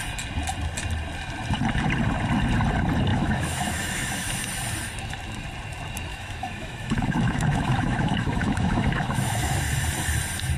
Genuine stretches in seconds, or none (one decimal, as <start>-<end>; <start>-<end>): 0.0-3.1; 4.5-6.1; 9.6-10.6

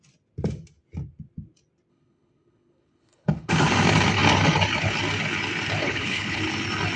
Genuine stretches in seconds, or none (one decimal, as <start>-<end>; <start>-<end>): 0.0-1.9; 3.5-5.8; 6.4-7.0

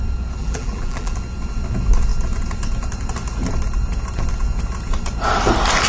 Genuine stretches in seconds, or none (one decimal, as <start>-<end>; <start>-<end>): 0.0-0.4; 1.1-5.9

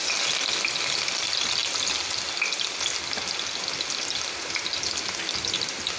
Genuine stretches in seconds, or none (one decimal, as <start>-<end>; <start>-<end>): 0.0-6.0

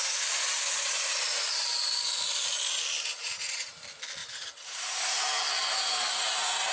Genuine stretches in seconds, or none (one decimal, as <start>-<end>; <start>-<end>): 0.0-3.1; 3.7-4.2; 5.3-6.7

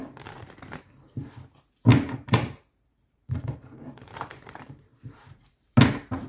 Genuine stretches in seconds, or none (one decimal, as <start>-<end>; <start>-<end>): 0.0-1.9; 5.7-6.3